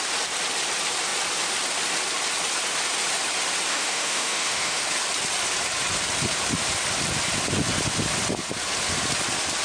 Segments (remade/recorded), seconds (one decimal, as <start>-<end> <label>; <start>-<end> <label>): 0.0-3.7 recorded; 3.7-4.8 remade; 4.8-9.6 recorded